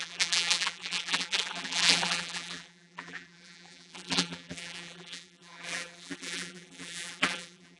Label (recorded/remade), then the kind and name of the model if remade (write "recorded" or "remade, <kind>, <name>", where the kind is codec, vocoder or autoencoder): remade, vocoder, BigVGAN v2